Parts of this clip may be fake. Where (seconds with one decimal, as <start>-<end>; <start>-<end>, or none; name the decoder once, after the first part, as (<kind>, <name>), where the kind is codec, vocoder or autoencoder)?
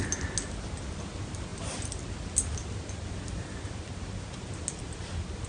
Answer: none